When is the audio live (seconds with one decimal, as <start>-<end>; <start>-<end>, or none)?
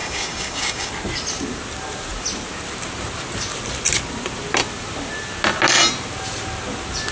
0.9-7.1